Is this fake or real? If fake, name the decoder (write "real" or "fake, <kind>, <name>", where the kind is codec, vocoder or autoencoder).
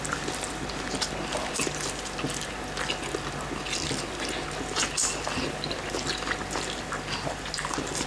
real